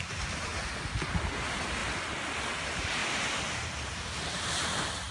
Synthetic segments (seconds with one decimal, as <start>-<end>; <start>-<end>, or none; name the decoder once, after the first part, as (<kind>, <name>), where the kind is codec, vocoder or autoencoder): 0.0-0.5 (vocoder, BigVGAN v2); 1.1-1.8; 2.6-3.0; 4.2-5.1